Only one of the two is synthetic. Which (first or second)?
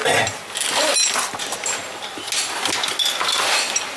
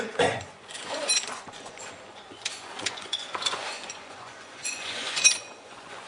second